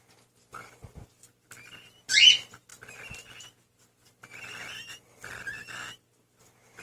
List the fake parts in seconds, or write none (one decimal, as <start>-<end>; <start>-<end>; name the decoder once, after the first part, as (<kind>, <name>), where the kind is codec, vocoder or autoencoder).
none